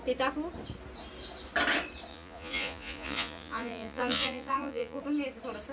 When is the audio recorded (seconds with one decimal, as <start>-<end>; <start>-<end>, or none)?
0.0-2.1; 5.0-5.7